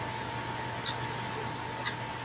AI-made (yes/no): no